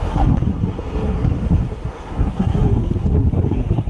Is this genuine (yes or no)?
no